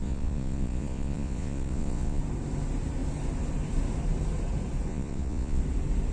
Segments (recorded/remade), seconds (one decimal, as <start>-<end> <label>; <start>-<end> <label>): 0.0-2.2 remade; 2.2-4.9 recorded; 4.9-5.6 remade; 5.6-6.1 recorded